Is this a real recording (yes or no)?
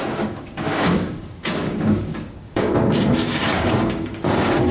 no